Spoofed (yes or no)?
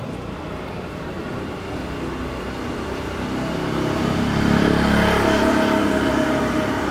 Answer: yes